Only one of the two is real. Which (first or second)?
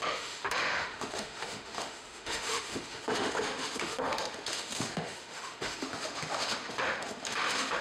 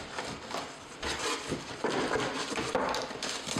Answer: second